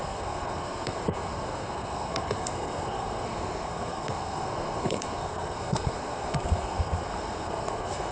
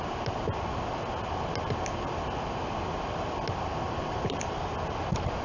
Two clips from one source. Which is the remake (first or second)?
first